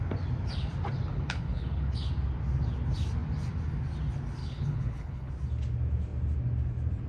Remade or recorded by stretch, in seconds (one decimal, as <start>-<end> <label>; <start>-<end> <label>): 0.0-1.1 recorded; 1.1-2.1 remade; 2.1-4.4 recorded; 4.4-5.3 remade; 5.3-7.1 recorded